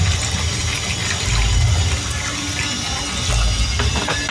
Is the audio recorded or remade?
recorded